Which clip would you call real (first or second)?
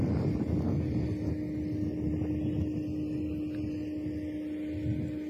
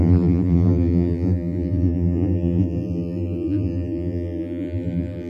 first